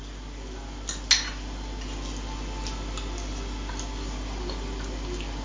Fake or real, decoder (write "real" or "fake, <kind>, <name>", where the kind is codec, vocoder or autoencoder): real